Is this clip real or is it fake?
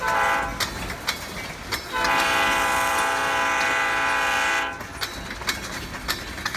real